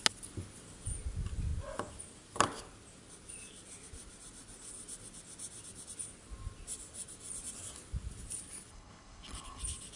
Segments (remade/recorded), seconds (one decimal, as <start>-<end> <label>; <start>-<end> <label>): 0.0-8.7 recorded; 8.7-9.6 remade; 9.6-10.0 recorded

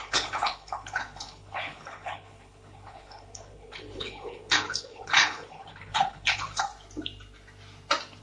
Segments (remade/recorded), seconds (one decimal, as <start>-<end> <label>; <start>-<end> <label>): 0.0-6.7 remade; 6.7-8.2 recorded

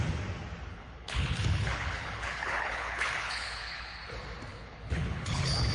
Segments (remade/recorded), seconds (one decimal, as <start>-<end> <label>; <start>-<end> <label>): 0.0-0.7 recorded; 0.7-4.0 remade; 4.0-4.5 recorded; 4.5-5.7 remade

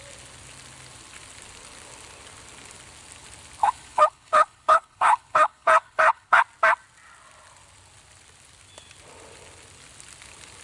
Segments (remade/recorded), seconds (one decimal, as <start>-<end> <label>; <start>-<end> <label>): 0.0-3.6 recorded; 3.6-6.4 remade; 6.4-10.6 recorded